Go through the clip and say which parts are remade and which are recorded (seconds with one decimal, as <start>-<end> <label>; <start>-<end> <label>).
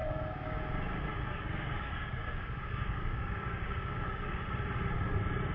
0.0-0.6 remade; 0.6-1.1 recorded; 1.1-4.4 remade; 4.4-5.5 recorded